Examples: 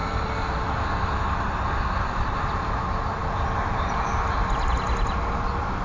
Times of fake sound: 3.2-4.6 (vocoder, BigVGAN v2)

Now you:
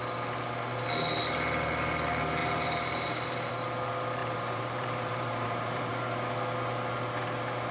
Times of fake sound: 2.4-3.5 (vocoder, BigVGAN v2); 4.2-5.9

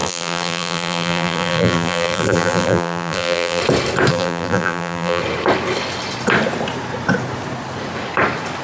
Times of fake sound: 0.0-3.6 (vocoder, BigVGAN v2); 4.1-5.2

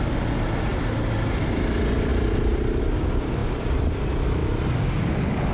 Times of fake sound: 3.4-3.9 (vocoder, BigVGAN v2)

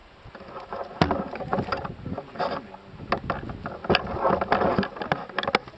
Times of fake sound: none

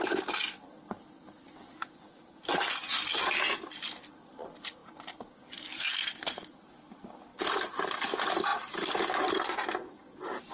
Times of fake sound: 4.8-6.7 (vocoder, BigVGAN v2); 7.3-7.8; 8.5-9.3